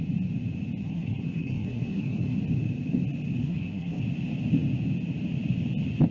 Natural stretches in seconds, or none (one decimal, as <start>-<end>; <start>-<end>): 0.0-0.8; 2.4-3.4; 4.0-6.1